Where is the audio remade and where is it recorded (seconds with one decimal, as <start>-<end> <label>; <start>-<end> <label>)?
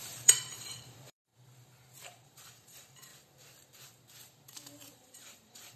0.0-1.3 remade; 1.3-2.0 recorded; 2.0-3.1 remade; 3.1-4.9 recorded; 4.9-5.8 remade